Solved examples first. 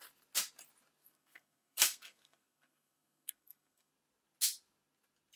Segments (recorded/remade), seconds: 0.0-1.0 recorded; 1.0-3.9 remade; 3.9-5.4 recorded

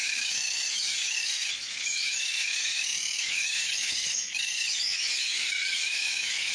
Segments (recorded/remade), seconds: 0.0-6.5 remade

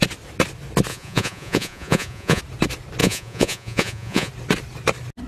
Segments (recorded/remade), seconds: 0.0-0.9 recorded; 0.9-2.4 remade; 2.4-3.0 recorded; 3.0-4.3 remade; 4.3-5.3 recorded

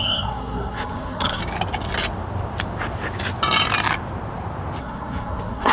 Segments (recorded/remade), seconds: 0.0-1.4 remade; 1.4-4.8 recorded; 4.8-5.7 remade